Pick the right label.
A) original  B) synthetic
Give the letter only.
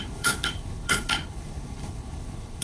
B